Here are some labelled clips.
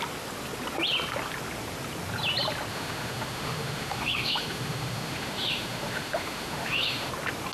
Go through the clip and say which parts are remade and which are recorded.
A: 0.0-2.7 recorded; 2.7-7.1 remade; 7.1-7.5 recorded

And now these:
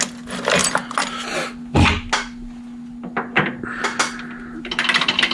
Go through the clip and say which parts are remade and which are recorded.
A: 0.0-5.3 recorded

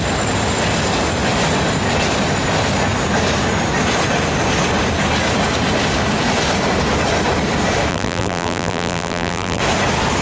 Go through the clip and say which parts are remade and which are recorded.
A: 0.0-7.9 recorded; 7.9-9.6 remade; 9.6-10.2 recorded

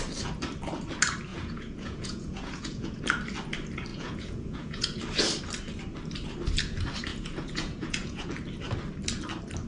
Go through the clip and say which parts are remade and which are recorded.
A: 0.0-1.3 recorded; 1.3-3.0 remade; 3.0-3.9 recorded; 3.9-5.0 remade; 5.0-7.1 recorded; 7.1-8.3 remade; 8.3-9.7 recorded

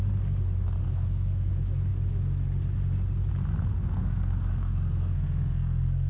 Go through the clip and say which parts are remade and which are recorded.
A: 0.0-0.8 recorded; 0.8-1.5 remade; 1.5-3.7 recorded; 3.7-6.1 remade